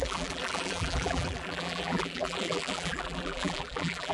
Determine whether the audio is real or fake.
fake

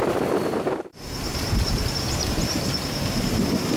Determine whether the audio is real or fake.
fake